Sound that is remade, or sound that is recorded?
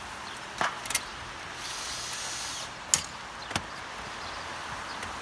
recorded